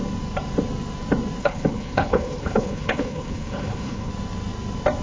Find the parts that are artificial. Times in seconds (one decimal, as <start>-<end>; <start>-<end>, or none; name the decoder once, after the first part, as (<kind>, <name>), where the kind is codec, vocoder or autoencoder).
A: 1.4-4.1 (codec, HILCodec)